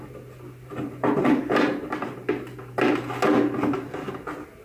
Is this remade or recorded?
recorded